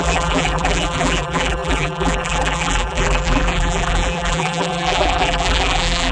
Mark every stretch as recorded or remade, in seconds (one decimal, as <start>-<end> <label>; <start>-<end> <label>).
0.0-6.1 remade